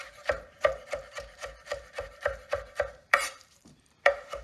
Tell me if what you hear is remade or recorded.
remade